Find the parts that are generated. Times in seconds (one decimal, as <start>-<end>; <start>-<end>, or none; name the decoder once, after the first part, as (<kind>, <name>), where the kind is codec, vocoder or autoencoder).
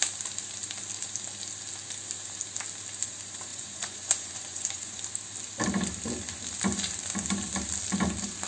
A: 3.5-5.0 (vocoder, Vocos)